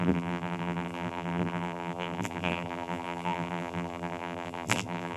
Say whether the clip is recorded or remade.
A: remade